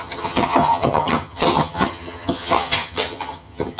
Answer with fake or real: fake